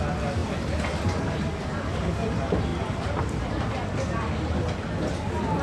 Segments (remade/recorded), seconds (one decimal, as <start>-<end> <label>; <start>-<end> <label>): 0.0-5.6 recorded